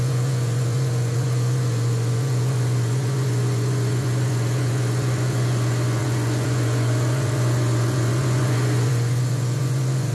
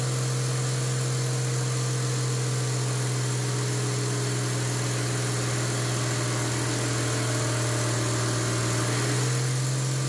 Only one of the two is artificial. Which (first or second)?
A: first